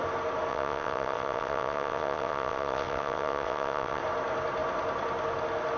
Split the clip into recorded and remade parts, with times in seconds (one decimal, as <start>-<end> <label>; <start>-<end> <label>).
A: 0.0-0.5 recorded; 0.5-4.0 remade; 4.0-5.8 recorded